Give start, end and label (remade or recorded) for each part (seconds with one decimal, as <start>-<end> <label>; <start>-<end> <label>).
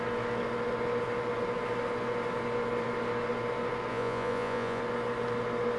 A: 0.0-3.9 recorded; 3.9-4.8 remade; 4.8-5.8 recorded